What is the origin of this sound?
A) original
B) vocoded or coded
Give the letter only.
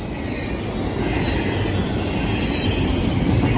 A